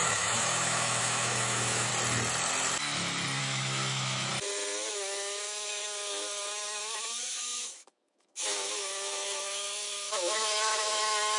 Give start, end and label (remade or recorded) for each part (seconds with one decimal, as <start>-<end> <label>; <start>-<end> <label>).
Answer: 0.0-1.9 remade; 1.9-3.4 recorded; 3.4-4.3 remade; 4.3-4.9 recorded; 4.9-11.4 remade